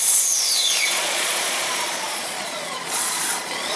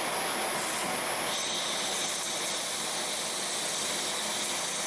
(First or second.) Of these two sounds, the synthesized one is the first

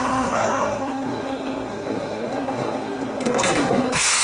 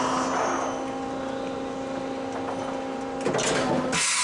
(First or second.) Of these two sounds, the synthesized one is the first